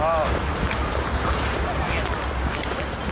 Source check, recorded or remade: recorded